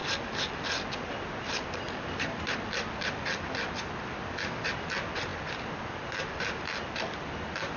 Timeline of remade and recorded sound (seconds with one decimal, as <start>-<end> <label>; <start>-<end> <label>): 0.0-7.8 recorded